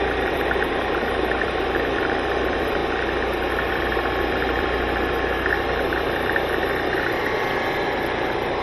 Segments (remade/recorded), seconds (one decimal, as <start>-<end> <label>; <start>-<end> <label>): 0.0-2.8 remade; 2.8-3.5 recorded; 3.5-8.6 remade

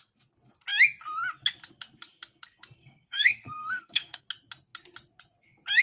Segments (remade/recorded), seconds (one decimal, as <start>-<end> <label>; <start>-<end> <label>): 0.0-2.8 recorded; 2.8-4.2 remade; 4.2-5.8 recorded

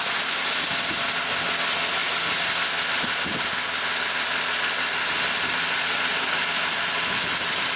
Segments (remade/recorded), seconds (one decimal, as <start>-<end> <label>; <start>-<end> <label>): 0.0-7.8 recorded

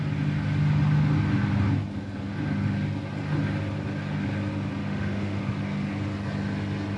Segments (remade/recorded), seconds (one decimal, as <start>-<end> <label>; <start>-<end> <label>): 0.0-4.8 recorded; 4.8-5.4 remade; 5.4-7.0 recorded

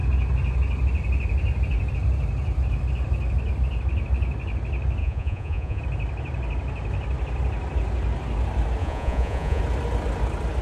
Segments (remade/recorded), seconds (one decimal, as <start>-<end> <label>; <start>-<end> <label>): 0.0-5.0 recorded; 5.0-5.8 remade; 5.8-8.8 recorded; 8.8-9.6 remade; 9.6-10.6 recorded

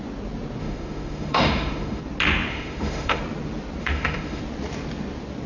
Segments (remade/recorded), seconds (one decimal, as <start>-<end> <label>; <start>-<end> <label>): 0.0-0.6 recorded; 0.6-2.0 remade; 2.0-2.5 recorded; 2.5-3.2 remade; 3.2-3.8 recorded; 3.8-4.4 remade; 4.4-5.5 recorded